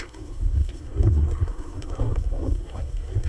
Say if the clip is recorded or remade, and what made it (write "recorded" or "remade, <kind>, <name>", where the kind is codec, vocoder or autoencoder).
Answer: remade, codec, SNAC